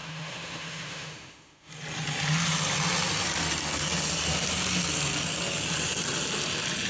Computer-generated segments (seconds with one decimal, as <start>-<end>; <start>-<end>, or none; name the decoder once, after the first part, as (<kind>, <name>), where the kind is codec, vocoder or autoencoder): 0.0-1.7 (autoencoder, DAC-VAE)